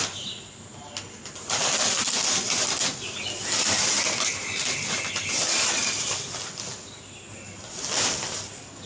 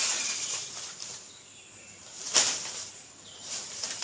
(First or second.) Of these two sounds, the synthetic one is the second